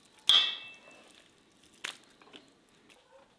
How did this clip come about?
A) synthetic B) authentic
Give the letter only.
B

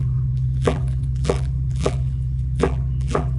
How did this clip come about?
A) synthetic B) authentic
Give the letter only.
A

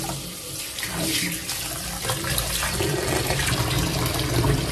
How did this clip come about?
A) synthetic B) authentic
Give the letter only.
A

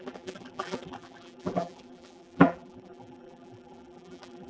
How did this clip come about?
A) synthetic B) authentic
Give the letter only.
A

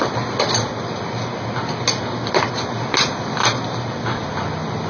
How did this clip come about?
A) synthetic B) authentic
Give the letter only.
B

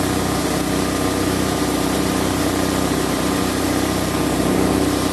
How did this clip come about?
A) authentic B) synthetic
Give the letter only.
B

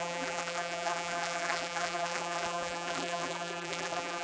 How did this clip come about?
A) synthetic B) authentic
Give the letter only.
A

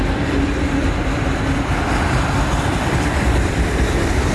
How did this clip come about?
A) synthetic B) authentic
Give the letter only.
A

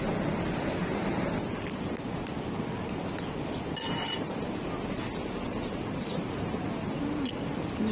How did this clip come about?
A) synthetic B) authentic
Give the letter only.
B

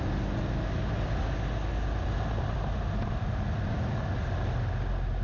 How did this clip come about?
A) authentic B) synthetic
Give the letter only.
A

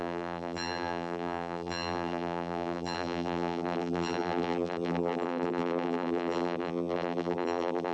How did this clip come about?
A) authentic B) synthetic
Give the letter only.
B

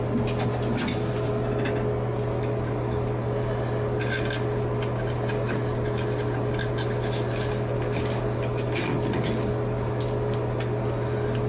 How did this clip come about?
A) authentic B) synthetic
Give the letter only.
A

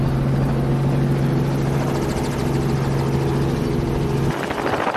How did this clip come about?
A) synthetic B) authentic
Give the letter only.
B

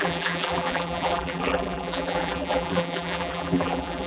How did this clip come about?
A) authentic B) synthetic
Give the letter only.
B